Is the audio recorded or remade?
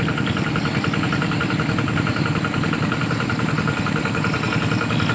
recorded